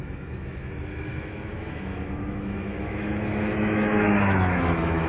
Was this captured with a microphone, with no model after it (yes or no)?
no